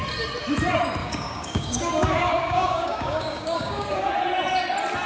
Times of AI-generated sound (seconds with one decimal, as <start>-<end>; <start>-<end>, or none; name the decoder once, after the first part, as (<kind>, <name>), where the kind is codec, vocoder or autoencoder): 1.0-4.1 (codec, DAC)